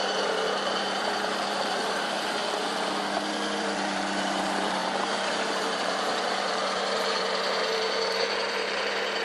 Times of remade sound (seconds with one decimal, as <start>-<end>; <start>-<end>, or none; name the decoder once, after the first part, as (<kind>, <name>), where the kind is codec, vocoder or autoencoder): 0.0-2.4 (vocoder, BigVGAN v2); 3.6-9.2